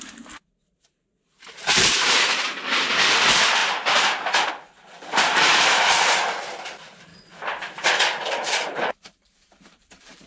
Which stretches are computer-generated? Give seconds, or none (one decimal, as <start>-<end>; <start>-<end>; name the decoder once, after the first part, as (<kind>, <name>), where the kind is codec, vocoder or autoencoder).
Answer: 0.0-7.1 (vocoder, BigVGAN v2); 8.3-10.3